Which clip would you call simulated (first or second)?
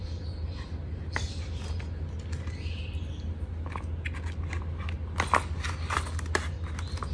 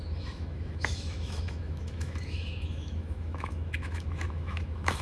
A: second